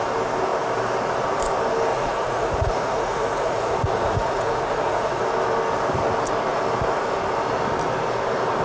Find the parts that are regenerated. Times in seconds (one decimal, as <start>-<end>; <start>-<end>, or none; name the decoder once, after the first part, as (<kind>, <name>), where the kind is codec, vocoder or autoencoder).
1.9-5.2 (vocoder, Vocos)